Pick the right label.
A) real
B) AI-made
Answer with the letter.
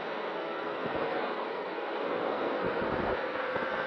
B